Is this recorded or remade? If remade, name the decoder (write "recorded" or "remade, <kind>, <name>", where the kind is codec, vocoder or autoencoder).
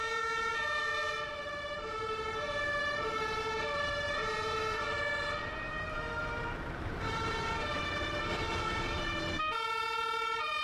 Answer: remade, vocoder, BigVGAN v2